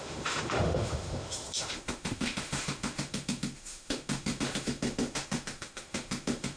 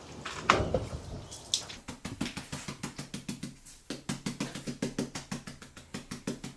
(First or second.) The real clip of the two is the second